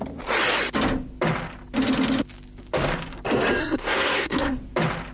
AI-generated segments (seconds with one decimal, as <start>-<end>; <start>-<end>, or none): 3.6-4.6